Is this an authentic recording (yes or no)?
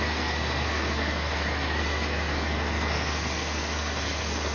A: no